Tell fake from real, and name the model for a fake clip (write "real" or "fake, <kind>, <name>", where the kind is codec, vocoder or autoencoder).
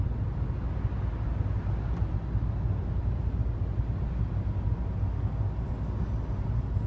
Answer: real